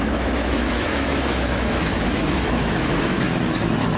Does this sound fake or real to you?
fake